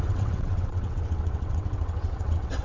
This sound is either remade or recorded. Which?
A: remade